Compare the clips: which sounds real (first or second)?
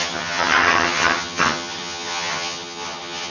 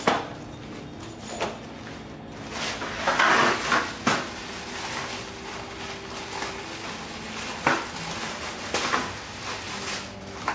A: second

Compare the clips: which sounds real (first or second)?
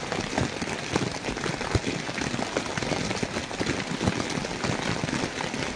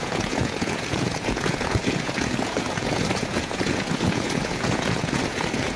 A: first